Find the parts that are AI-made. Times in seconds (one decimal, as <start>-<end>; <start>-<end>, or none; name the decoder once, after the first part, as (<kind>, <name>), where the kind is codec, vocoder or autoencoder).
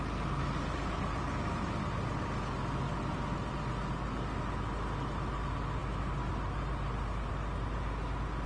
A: none